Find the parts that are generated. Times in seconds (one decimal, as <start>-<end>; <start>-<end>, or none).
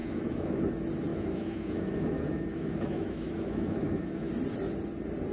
0.0-0.6; 1.1-4.3